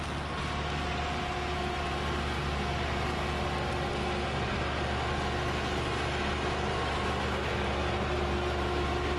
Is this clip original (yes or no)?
yes